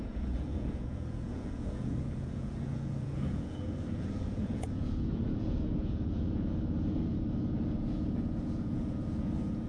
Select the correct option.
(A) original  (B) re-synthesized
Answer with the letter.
B